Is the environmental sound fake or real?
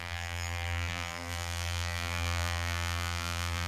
fake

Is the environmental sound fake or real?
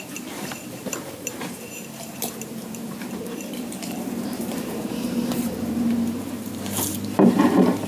fake